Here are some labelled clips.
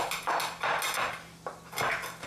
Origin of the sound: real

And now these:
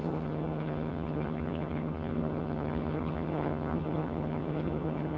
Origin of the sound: fake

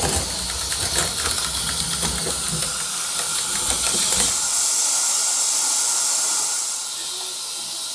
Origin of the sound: real